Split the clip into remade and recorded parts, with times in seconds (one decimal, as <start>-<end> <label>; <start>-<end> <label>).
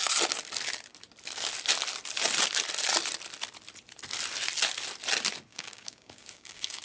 0.0-5.5 recorded; 5.5-6.8 remade